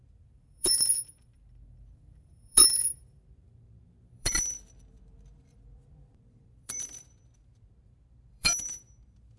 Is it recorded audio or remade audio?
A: remade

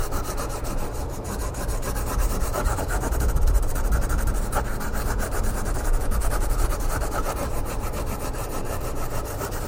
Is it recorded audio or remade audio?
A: remade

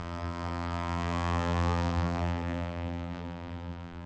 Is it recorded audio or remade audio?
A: remade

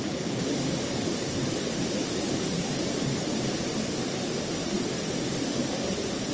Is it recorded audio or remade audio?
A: remade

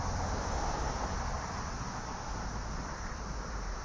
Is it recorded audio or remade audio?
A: remade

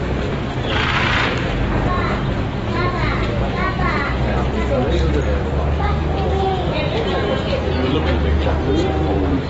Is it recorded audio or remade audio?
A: recorded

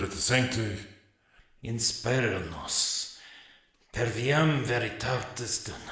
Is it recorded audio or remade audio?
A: recorded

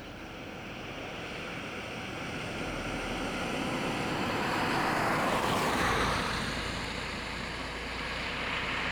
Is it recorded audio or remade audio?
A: remade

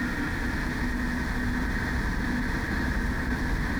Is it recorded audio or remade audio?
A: recorded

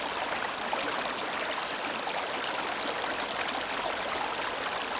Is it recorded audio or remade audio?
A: recorded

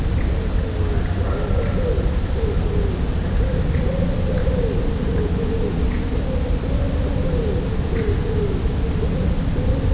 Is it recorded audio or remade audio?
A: recorded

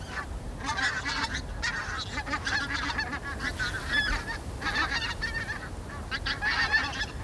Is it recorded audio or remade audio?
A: recorded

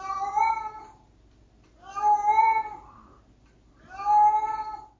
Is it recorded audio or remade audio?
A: recorded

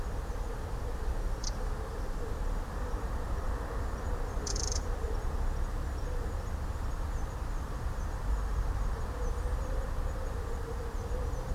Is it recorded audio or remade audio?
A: remade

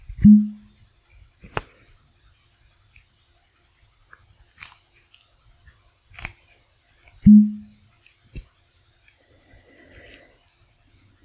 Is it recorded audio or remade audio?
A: recorded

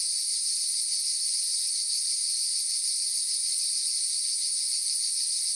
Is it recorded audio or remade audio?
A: remade